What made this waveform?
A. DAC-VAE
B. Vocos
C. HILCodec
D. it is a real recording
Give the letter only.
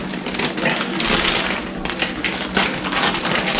D